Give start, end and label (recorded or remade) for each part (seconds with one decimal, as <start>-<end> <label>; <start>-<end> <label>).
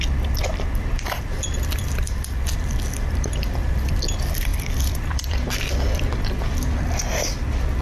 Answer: 0.0-7.8 recorded